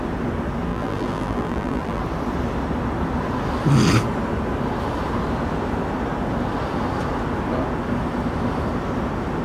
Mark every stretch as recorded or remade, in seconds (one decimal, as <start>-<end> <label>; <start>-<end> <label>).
0.0-0.7 recorded; 0.7-2.0 remade; 2.0-9.4 recorded